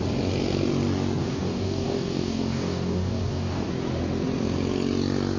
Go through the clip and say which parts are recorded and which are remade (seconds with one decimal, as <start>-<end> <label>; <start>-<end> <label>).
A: 0.0-1.2 recorded; 1.2-3.7 remade; 3.7-5.4 recorded